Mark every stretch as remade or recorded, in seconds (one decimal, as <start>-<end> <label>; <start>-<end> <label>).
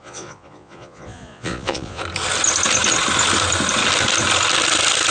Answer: 0.0-2.0 remade; 2.0-5.1 recorded